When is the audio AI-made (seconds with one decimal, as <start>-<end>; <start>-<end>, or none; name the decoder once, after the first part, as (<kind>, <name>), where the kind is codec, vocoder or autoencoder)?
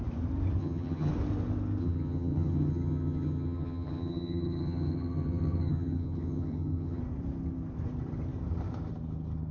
0.6-1.1 (vocoder, HiFi-GAN); 1.8-7.0